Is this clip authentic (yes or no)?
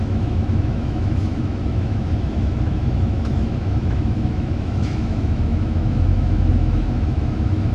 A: no